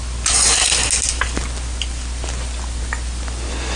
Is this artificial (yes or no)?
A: no